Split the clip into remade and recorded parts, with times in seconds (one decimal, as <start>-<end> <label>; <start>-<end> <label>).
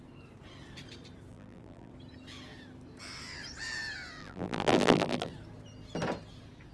0.0-1.3 recorded; 1.3-1.9 remade; 1.9-4.2 recorded; 4.2-5.3 remade; 5.3-6.7 recorded